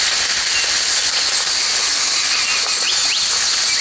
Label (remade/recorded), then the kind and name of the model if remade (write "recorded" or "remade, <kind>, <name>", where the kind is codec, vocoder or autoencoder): recorded